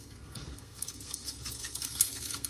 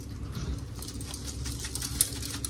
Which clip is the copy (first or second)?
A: first